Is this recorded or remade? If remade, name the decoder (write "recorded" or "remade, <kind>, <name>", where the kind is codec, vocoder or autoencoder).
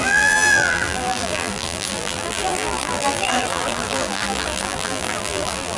remade, vocoder, BigVGAN v2